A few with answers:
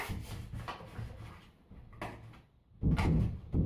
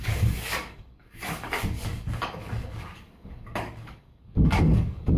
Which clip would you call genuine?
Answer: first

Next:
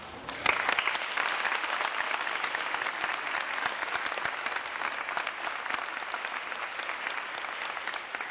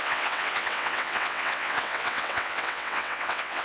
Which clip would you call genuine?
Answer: first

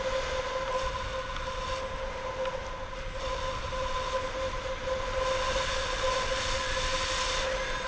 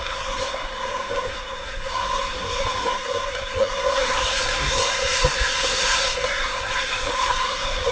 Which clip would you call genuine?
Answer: first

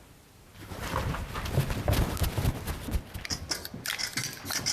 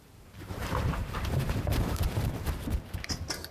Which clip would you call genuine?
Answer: first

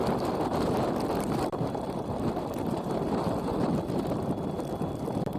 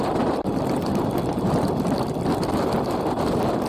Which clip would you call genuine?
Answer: second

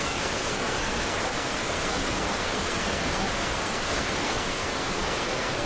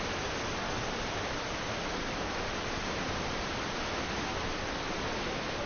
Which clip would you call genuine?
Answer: second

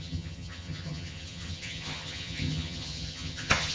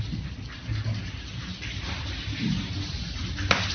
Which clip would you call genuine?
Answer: second